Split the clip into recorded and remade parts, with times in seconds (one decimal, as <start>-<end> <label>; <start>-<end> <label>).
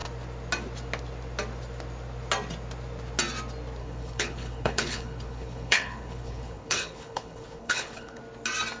0.0-3.8 recorded; 3.8-8.2 remade; 8.2-8.8 recorded